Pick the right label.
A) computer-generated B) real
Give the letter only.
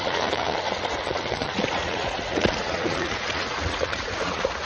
A